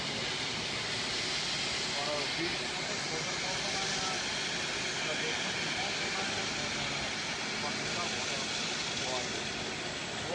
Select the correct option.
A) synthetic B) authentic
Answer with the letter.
B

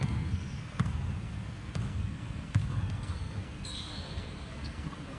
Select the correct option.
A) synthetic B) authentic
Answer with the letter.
A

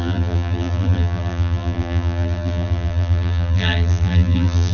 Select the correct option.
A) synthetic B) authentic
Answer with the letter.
A